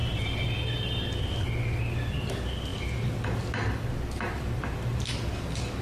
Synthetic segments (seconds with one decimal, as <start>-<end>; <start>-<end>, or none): none